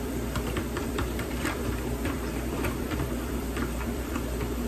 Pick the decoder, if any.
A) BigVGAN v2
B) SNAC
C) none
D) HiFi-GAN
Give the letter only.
A